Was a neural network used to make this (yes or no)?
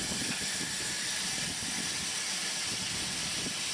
no